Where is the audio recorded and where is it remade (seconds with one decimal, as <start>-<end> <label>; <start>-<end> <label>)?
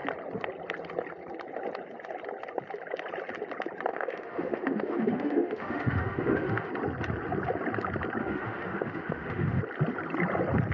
0.0-3.9 recorded; 3.9-6.7 remade; 6.7-8.2 recorded; 8.2-9.6 remade; 9.6-10.7 recorded